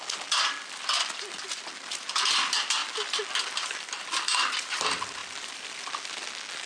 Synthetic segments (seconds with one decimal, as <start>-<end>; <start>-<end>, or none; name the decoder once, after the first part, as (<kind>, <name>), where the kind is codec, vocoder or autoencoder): none